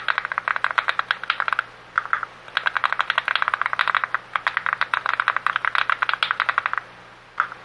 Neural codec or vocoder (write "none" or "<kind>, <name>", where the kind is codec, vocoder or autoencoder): none